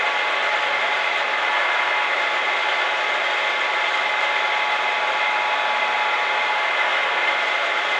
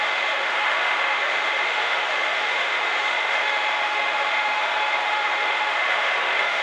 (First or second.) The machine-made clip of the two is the second